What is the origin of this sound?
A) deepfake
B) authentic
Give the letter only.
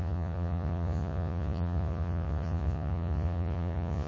A